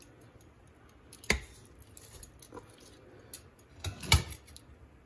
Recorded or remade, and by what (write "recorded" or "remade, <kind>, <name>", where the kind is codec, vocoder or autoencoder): recorded